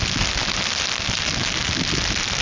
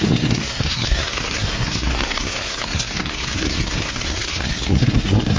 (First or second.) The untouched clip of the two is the first